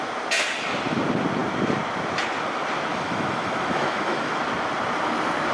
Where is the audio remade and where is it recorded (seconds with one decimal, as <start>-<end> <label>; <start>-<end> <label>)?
0.0-2.9 recorded; 2.9-4.4 remade; 4.4-5.5 recorded